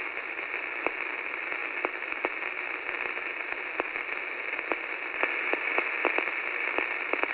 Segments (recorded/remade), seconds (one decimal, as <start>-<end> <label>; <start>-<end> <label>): 0.0-7.3 recorded